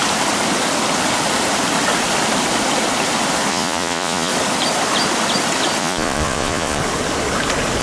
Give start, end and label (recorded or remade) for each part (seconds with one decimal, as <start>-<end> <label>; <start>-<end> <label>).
0.0-3.5 recorded; 3.5-4.3 remade; 4.3-5.8 recorded; 5.8-6.8 remade; 6.8-7.8 recorded